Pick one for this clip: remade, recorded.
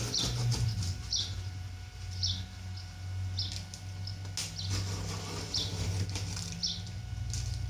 recorded